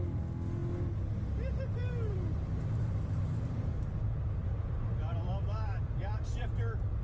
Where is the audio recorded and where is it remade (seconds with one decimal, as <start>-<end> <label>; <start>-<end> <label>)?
0.0-1.8 recorded; 1.8-6.0 remade; 6.0-7.0 recorded